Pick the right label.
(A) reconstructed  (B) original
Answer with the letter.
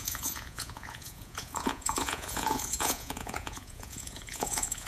A